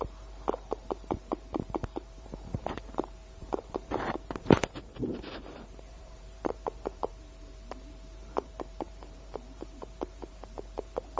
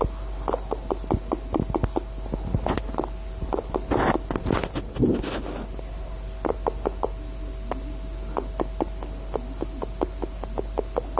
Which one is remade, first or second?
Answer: first